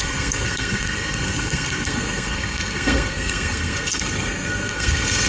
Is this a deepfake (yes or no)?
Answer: yes